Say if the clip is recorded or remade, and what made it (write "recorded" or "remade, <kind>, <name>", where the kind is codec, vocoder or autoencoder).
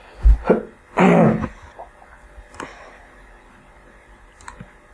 recorded